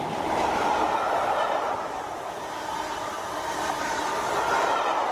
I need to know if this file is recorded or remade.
remade